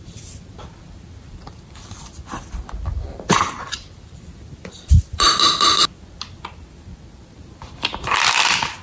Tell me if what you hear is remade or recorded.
remade